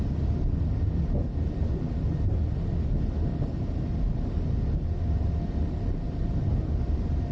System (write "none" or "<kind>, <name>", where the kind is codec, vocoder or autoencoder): none